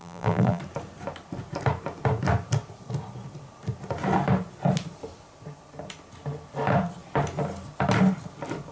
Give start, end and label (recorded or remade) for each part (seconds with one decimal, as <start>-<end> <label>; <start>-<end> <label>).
0.0-0.6 remade; 0.6-8.7 recorded